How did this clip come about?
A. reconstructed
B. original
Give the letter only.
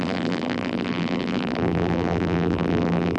A